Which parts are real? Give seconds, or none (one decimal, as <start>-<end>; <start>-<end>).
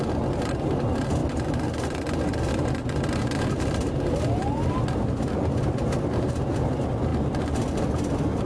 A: 0.0-8.5